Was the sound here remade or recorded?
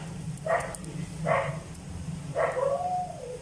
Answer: remade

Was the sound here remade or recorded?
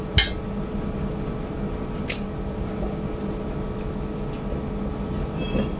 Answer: recorded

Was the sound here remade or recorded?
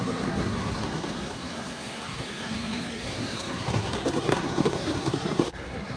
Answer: remade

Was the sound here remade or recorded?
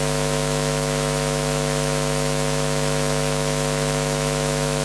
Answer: remade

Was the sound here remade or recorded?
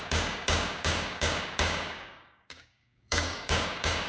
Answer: remade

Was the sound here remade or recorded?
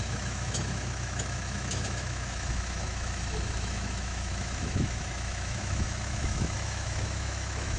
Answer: remade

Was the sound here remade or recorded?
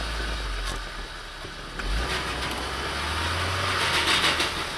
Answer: recorded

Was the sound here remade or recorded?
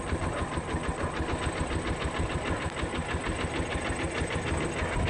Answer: recorded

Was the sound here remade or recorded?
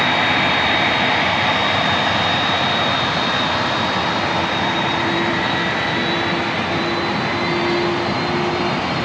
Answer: remade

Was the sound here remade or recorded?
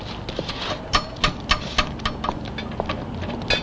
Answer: recorded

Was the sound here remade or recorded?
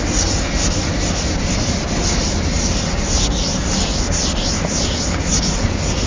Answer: recorded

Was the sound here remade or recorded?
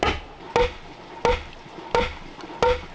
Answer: recorded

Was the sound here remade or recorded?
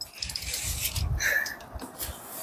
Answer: recorded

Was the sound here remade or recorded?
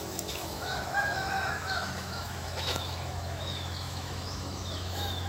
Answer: remade